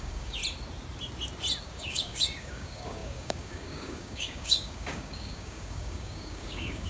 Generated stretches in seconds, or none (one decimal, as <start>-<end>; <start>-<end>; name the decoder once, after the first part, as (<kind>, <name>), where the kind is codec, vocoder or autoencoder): 0.0-0.4 (codec, DAC); 1.6-6.9